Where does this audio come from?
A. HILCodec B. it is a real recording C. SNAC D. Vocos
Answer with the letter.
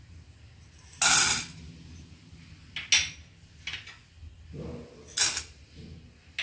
B